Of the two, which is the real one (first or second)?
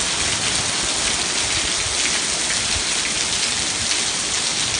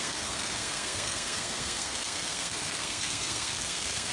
first